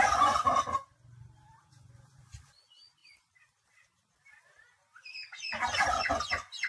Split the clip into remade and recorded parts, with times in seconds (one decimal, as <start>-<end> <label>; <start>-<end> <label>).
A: 0.0-0.5 remade; 0.5-1.6 recorded; 1.6-3.0 remade; 3.0-5.9 recorded; 5.9-6.7 remade